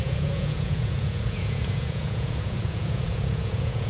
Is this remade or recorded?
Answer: remade